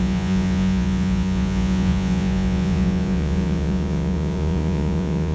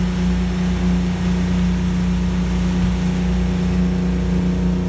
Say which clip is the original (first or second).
second